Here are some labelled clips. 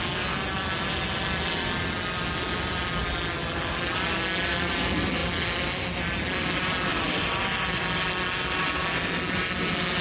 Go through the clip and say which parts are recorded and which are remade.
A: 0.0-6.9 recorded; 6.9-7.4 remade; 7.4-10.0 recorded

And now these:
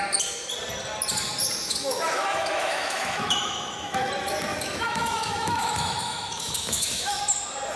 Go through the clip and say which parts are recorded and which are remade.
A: 0.0-1.6 recorded; 1.6-4.1 remade; 4.1-4.5 recorded; 4.5-7.2 remade; 7.2-7.8 recorded

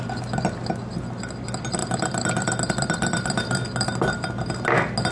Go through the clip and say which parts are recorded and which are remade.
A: 0.0-5.1 recorded

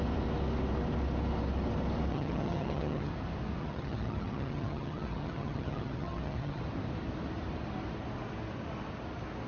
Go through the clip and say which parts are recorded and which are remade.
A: 0.0-2.1 recorded; 2.1-3.1 remade; 3.1-3.6 recorded; 3.6-6.6 remade; 6.6-9.5 recorded

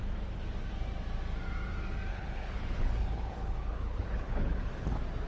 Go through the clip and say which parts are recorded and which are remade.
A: 0.0-2.1 recorded; 2.1-4.7 remade; 4.7-5.3 recorded

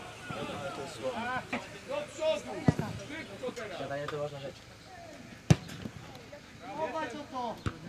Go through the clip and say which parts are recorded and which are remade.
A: 0.0-7.9 recorded

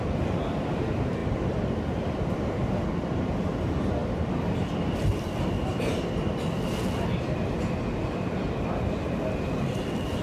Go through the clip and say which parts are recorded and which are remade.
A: 0.0-10.2 recorded

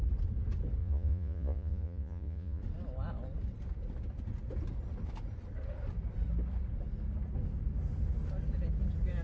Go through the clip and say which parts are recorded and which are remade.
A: 0.0-0.8 recorded; 0.8-2.6 remade; 2.6-9.2 recorded